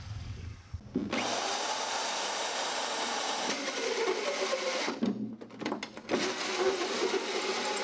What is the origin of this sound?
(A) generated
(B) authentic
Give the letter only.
B